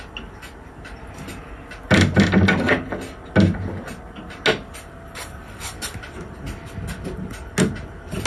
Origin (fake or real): real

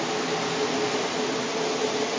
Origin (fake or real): real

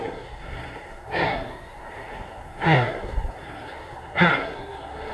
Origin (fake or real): fake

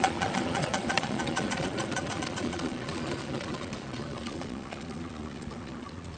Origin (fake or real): fake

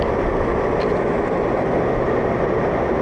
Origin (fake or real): real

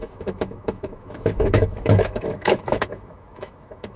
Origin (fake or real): fake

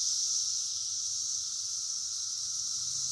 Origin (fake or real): real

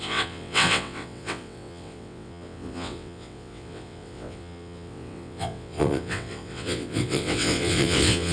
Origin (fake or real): fake